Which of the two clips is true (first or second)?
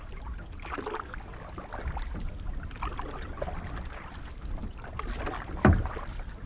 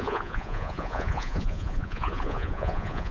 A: first